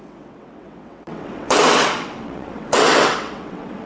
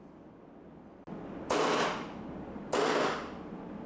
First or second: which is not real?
first